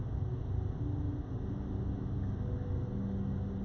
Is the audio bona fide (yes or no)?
yes